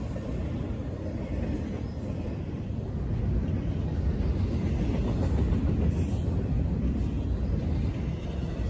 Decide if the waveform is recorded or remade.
recorded